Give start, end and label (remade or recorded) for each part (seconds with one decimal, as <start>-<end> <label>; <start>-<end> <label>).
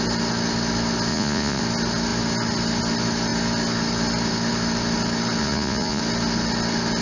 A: 0.0-1.1 recorded; 1.1-1.6 remade; 1.6-5.4 recorded; 5.4-6.0 remade; 6.0-7.0 recorded